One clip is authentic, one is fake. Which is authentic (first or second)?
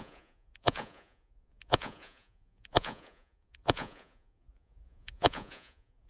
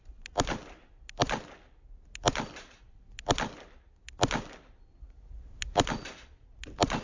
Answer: second